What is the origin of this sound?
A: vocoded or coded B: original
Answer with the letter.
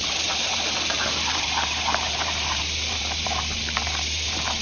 A